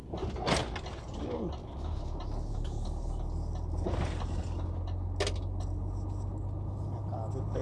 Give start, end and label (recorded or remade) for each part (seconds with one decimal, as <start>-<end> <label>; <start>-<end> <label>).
0.0-7.6 recorded